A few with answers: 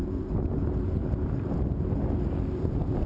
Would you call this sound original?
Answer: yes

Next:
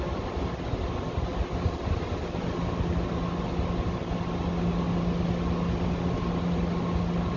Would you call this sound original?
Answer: yes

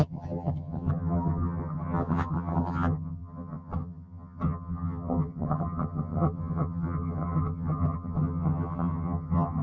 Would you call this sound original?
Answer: no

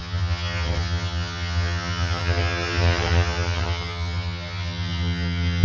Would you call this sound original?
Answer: no